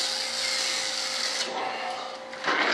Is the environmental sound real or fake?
real